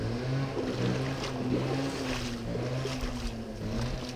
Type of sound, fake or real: real